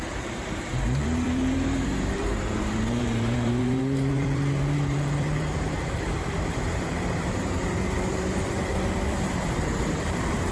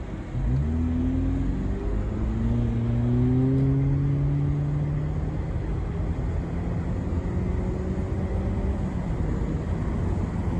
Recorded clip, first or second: second